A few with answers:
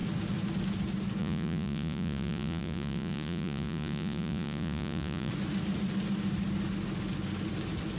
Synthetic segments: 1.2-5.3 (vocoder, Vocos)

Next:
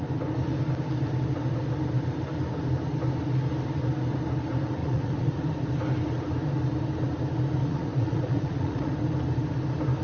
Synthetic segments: 4.8-5.4 (vocoder, Vocos); 7.6-8.9

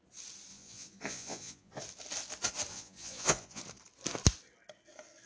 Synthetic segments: 0.5-1.8 (vocoder, Vocos); 2.7-3.6

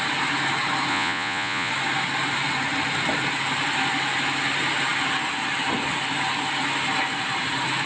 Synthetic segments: 0.9-1.7 (vocoder, Vocos)

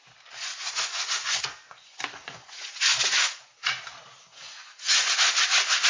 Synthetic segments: 0.5-3.8 (vocoder, Vocos); 4.3-5.1

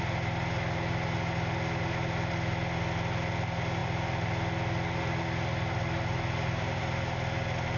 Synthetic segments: none